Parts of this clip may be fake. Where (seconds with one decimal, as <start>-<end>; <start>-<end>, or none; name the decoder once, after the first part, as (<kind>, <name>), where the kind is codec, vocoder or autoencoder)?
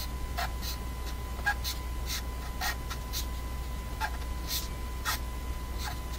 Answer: none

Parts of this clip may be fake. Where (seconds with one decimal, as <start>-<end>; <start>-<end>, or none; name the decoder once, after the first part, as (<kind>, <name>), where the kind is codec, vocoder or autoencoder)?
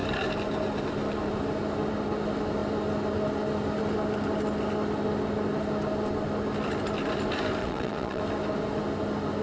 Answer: 7.6-8.2 (vocoder, WaveNeXt)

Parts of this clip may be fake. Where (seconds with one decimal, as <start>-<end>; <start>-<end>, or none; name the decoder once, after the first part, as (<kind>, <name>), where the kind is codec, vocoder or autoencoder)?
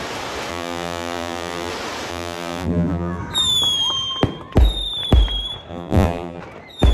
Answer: 0.5-1.7 (vocoder, BigVGAN v2); 2.1-3.2; 5.7-6.4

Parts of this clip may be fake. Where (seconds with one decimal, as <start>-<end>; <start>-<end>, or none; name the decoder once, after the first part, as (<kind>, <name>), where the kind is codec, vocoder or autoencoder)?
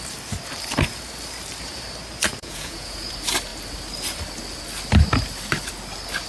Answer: 2.3-3.1 (vocoder, Vocos)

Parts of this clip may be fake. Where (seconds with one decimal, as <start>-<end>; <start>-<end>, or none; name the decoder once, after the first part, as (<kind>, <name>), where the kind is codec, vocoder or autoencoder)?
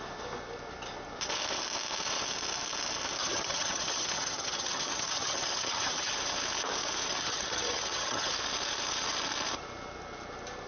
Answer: 3.2-6.1 (vocoder, HiFi-GAN); 7.1-8.3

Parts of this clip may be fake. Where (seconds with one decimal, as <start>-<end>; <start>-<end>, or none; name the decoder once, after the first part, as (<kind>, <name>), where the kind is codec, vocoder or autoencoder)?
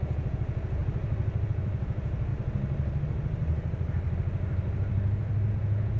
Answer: 0.0-0.8 (vocoder, Vocos); 1.5-2.3; 5.5-6.0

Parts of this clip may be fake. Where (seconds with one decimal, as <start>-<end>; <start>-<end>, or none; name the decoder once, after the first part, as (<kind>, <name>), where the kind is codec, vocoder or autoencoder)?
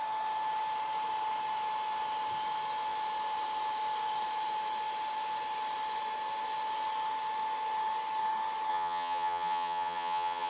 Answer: 8.7-10.5 (vocoder, HiFi-GAN)